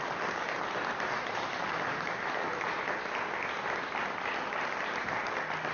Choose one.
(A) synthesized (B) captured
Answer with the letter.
B